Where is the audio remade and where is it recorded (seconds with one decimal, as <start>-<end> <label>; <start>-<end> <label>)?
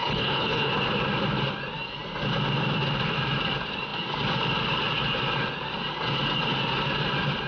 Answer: 0.0-0.7 remade; 0.7-7.5 recorded